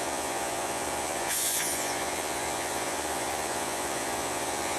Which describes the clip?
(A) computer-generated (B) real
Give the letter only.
A